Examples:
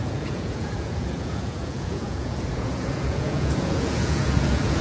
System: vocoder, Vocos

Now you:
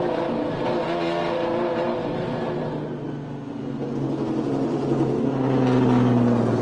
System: none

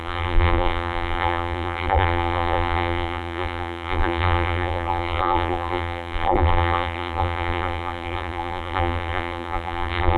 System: vocoder, BigVGAN v2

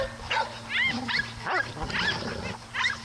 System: none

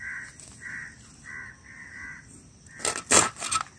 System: none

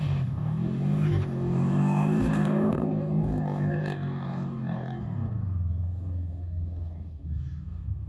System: codec, DAC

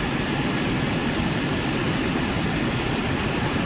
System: none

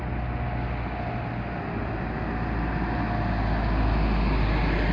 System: none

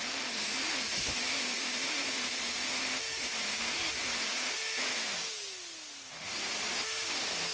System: none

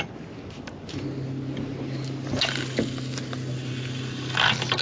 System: none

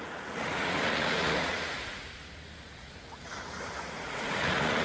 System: vocoder, Vocos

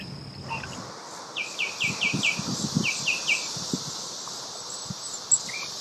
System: none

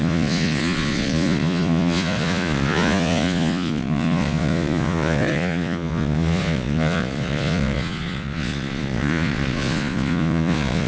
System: vocoder, Vocos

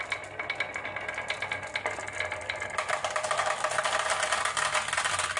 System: none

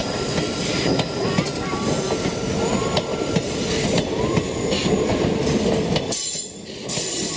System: none